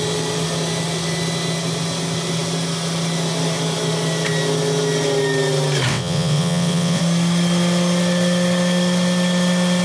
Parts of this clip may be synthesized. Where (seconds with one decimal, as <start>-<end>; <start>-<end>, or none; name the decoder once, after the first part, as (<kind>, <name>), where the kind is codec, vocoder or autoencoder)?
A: 5.9-7.0 (vocoder, WaveNeXt)